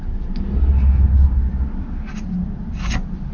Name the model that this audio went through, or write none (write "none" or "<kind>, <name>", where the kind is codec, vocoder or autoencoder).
none